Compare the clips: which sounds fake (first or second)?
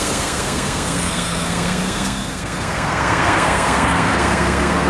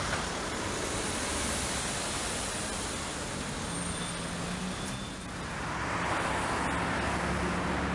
first